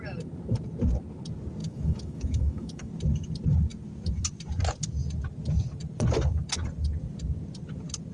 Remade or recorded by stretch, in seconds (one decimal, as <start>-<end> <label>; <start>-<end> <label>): 0.0-1.6 recorded; 1.6-2.9 remade; 2.9-8.1 recorded